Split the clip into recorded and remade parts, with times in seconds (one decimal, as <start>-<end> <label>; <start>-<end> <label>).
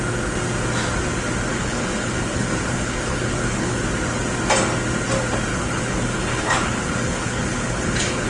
0.0-1.5 recorded; 1.5-3.8 remade; 3.8-5.5 recorded; 5.5-8.3 remade